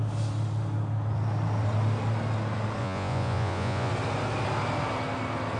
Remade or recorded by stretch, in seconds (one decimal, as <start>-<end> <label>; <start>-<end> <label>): 0.0-2.8 recorded; 2.8-3.9 remade; 3.9-5.6 recorded